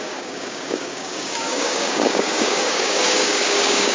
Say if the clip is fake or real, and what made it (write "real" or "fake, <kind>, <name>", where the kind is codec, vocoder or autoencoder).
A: fake, codec, DAC